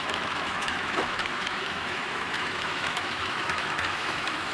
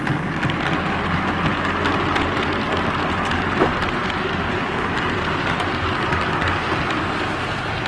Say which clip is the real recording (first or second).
second